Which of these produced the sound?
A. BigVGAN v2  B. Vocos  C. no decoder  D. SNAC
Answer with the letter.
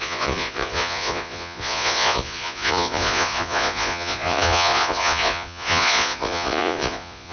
B